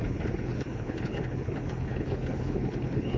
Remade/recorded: remade